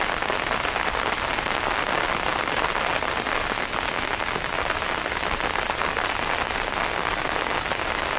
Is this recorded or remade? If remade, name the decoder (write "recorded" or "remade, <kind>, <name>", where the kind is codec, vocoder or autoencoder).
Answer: recorded